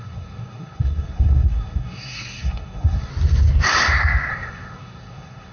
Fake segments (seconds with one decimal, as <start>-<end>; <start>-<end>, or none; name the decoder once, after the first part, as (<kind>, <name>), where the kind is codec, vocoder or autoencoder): 0.0-3.1 (codec, SNAC); 4.3-5.5